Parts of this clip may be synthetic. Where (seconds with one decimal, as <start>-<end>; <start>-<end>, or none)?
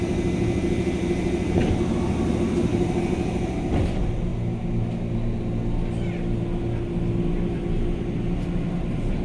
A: 2.7-3.5